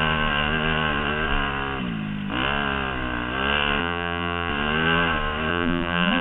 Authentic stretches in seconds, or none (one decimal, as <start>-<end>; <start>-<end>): 0.0-3.8; 4.5-5.5